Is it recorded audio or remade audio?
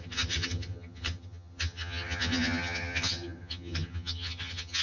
remade